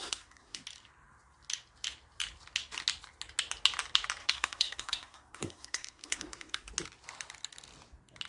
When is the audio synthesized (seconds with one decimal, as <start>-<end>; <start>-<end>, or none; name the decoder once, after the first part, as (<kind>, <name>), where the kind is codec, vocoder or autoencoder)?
0.0-0.6 (codec, SNAC); 4.2-6.7